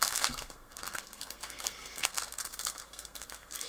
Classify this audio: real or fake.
fake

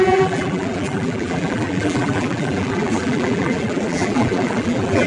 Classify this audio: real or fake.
fake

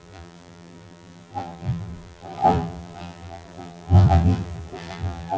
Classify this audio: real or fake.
fake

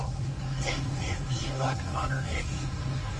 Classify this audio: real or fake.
fake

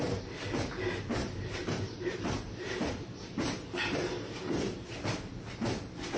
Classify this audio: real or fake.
fake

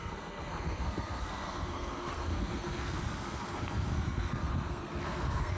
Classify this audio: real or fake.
fake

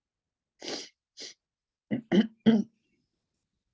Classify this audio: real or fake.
real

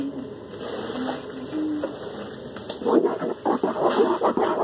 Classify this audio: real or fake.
real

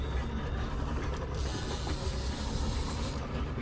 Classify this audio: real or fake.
real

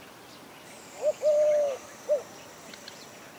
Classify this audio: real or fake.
real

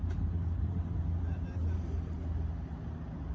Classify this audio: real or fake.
real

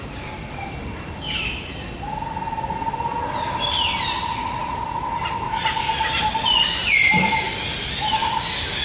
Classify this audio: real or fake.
real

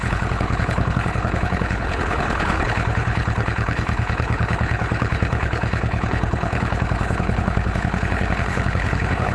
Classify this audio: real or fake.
fake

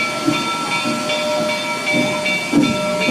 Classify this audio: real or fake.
real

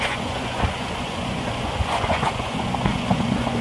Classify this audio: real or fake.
fake